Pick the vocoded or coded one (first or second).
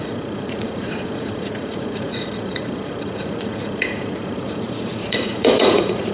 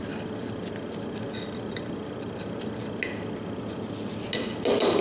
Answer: first